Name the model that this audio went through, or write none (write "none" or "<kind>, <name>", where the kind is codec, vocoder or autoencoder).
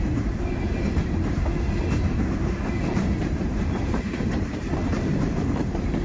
vocoder, BigVGAN v2